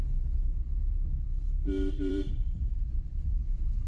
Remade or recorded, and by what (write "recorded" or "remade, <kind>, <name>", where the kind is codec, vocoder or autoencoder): remade, vocoder, BigVGAN v2